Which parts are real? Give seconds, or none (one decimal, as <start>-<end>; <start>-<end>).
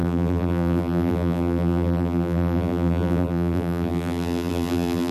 none